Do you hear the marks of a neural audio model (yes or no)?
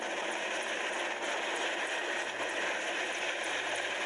no